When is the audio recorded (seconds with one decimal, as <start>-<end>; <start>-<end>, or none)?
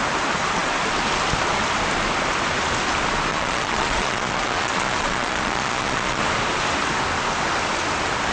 0.0-3.3; 6.2-8.3